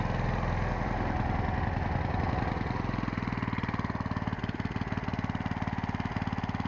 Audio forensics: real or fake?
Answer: real